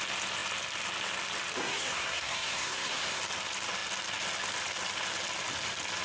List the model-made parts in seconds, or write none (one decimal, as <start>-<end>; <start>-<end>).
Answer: 1.6-3.2